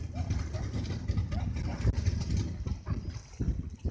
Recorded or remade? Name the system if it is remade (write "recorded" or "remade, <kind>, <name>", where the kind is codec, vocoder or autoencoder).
recorded